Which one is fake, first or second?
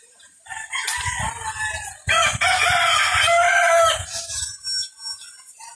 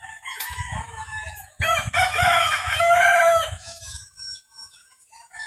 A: second